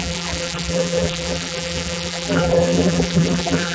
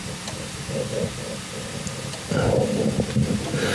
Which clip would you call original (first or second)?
second